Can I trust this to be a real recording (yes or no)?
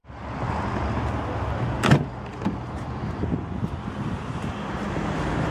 yes